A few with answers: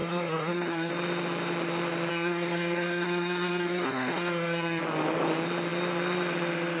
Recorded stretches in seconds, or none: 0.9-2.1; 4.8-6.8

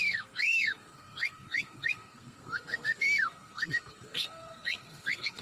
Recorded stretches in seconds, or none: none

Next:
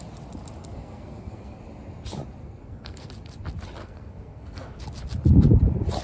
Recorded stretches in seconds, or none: 0.0-0.6; 1.6-2.4; 3.1-3.8; 4.8-6.0

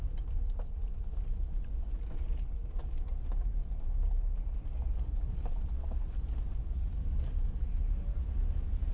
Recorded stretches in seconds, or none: 0.0-8.9

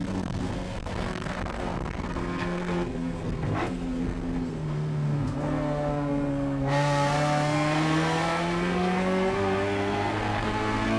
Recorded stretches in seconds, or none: none